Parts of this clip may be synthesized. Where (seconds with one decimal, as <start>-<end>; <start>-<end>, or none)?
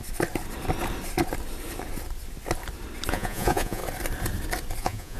3.1-3.8; 4.8-5.2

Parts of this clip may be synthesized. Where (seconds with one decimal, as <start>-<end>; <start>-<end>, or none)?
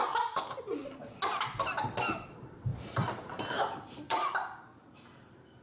2.7-5.6